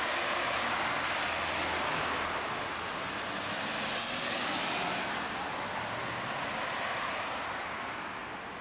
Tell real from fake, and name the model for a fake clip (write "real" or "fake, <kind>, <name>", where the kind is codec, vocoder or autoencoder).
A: real